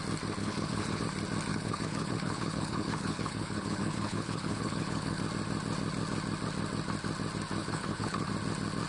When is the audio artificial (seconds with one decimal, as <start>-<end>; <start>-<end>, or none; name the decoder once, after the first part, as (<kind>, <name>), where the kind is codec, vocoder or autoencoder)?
0.4-1.0 (codec, HILCodec); 1.5-5.2; 7.6-8.3